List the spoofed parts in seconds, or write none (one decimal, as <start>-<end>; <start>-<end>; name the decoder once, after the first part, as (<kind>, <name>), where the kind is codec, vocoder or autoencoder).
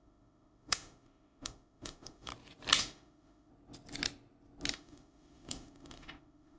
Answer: 0.0-2.3 (autoencoder, DAC-VAE); 2.8-3.5; 4.7-6.6